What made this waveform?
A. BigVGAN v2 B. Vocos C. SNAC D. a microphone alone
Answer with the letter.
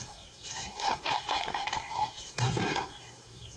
C